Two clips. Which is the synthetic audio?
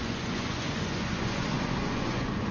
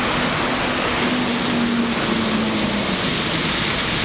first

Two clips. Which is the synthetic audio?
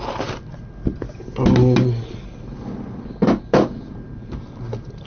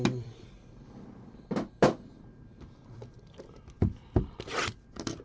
second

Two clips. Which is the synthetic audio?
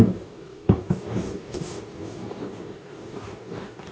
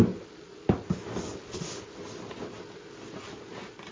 first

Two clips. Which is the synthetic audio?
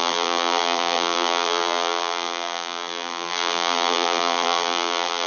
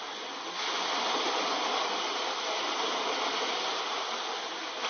first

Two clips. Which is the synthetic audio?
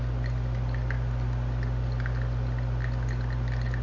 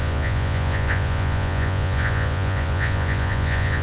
second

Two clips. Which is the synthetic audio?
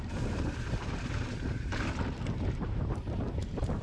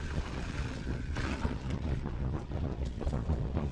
second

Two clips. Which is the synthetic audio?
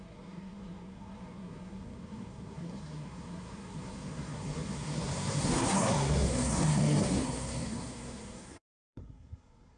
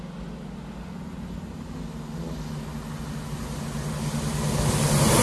first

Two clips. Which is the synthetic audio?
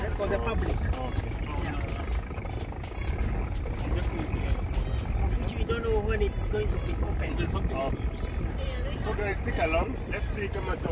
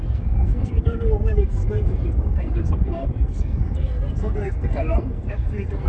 second